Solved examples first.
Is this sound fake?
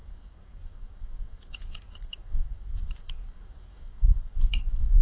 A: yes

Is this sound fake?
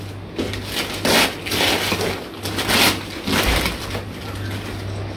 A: no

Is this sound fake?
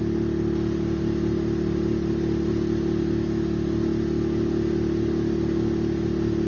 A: no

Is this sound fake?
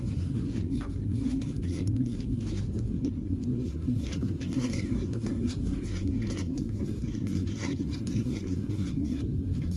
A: yes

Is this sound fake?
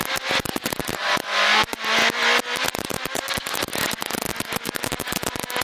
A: no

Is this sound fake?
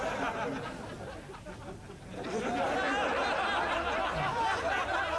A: no